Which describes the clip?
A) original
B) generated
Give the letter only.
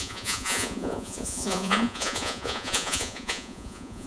B